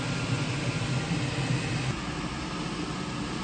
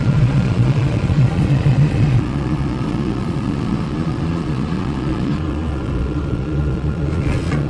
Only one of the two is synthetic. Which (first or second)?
second